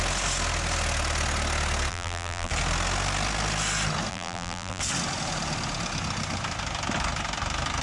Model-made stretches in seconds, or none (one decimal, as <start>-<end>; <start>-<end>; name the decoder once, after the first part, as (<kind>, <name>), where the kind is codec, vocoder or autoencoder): 1.9-2.5 (vocoder, BigVGAN v2); 4.1-4.8